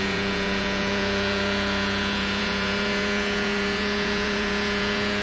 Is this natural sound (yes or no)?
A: no